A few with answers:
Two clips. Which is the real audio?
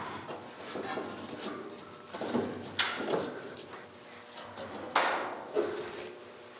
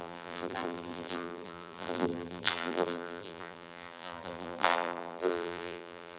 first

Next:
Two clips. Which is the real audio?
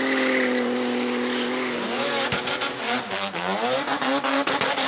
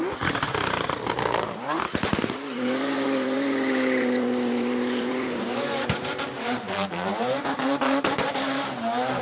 first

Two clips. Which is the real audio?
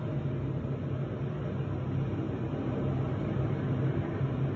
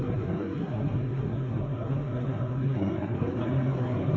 first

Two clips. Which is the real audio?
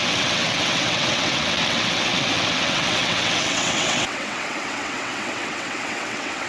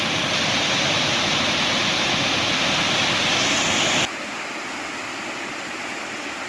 second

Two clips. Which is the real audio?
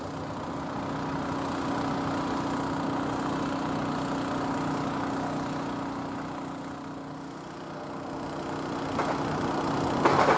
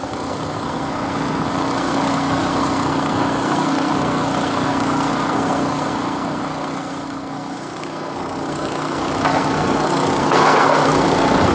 first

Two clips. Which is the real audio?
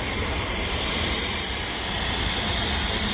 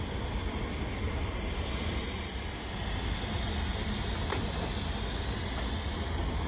second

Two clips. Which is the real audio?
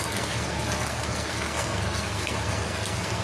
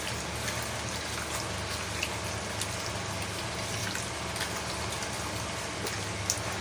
second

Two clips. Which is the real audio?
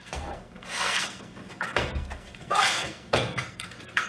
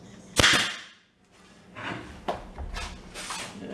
second